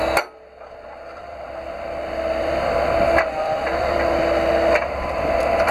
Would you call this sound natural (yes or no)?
no